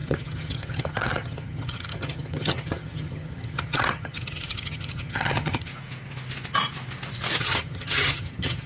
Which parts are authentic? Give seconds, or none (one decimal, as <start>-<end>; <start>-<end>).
5.7-7.4

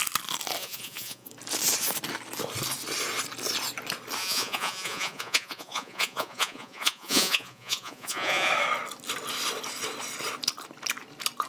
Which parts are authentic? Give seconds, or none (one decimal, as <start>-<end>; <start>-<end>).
0.0-0.6; 1.3-4.2; 8.5-11.5

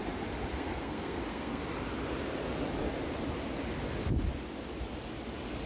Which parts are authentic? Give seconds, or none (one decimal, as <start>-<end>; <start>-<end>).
0.0-0.5; 1.6-5.7